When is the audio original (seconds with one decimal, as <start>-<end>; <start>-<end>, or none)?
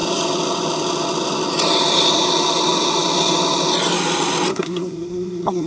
0.0-4.5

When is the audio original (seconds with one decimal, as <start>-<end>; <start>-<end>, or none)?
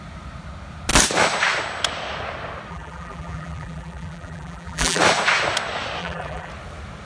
0.0-2.7; 5.0-6.0; 6.5-7.1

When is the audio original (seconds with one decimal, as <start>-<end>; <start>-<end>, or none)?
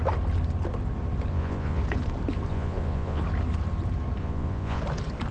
0.0-1.3; 1.8-2.5; 3.2-4.2; 4.8-5.3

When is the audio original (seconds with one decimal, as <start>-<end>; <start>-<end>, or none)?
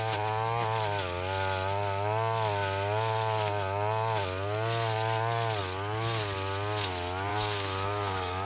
0.0-7.3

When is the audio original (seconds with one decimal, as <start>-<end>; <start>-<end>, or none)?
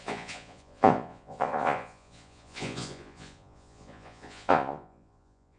none